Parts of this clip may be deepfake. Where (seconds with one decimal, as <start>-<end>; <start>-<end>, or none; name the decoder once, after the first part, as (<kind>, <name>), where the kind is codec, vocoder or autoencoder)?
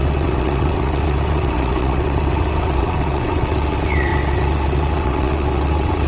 0.0-6.1 (vocoder, WaveNeXt)